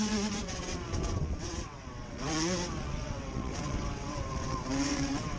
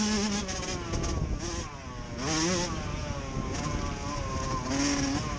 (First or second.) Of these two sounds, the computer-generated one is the first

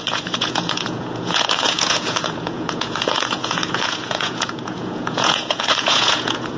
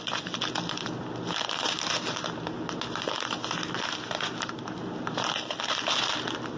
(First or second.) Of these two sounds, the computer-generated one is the first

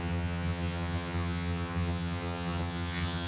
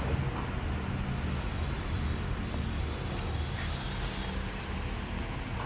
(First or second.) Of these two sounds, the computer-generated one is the first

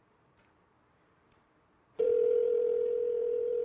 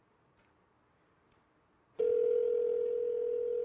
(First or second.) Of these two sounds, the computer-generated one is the first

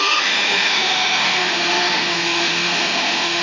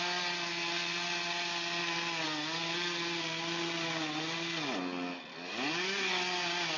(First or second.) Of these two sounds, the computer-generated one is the first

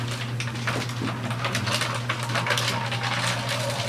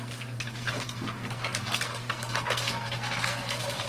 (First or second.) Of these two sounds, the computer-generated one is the second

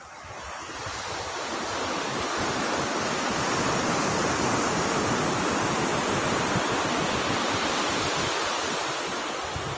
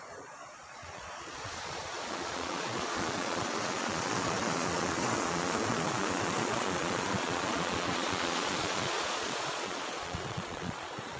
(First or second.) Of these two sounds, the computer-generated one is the second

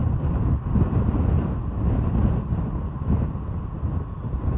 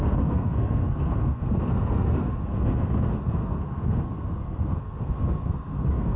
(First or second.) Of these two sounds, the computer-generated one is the second